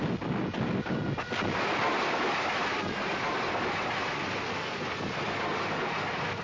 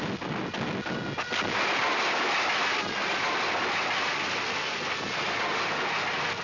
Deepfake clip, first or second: first